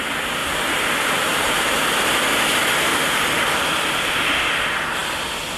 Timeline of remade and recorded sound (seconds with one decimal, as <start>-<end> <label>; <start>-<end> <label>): 0.0-0.4 recorded; 0.4-1.9 remade; 1.9-2.9 recorded; 2.9-4.1 remade; 4.1-5.6 recorded